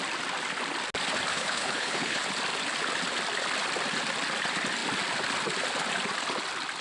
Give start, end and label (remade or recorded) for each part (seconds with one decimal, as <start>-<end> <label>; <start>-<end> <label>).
0.0-1.3 recorded; 1.3-2.2 remade; 2.2-6.8 recorded